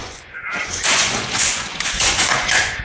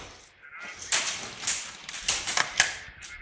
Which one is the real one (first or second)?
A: second